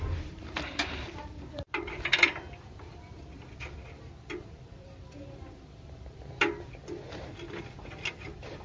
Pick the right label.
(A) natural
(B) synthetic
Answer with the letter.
B